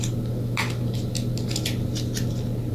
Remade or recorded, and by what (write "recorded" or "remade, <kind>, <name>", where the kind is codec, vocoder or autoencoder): recorded